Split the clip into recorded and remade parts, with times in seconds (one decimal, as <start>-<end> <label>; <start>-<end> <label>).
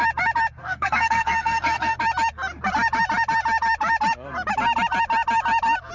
0.0-0.6 recorded; 0.6-2.0 remade; 2.0-5.9 recorded